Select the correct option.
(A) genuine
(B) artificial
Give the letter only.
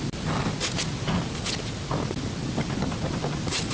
A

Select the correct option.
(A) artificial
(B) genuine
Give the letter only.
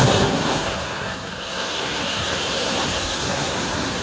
A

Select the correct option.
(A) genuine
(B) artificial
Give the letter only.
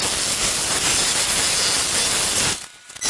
A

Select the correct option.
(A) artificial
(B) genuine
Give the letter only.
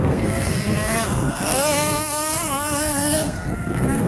A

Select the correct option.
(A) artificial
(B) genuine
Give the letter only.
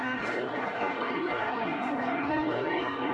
A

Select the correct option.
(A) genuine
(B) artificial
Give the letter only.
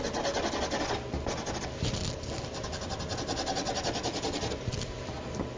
A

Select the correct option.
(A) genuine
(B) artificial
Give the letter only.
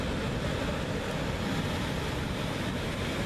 A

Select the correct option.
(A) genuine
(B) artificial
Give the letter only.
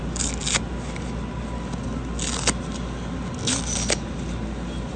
A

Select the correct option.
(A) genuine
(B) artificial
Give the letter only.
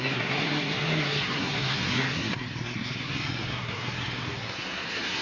B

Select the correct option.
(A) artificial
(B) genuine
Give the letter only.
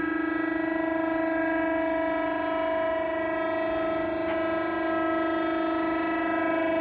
B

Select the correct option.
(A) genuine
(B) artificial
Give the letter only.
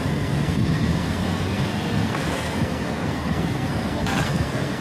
B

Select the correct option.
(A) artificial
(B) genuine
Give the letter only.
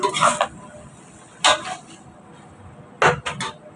B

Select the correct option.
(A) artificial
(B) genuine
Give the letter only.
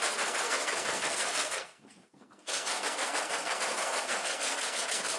A